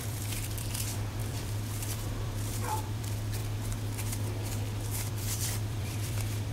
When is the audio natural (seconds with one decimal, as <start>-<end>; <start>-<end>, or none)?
3.4-5.1